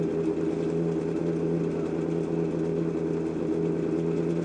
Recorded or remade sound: recorded